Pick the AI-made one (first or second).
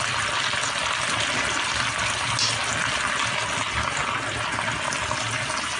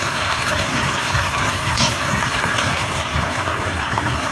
second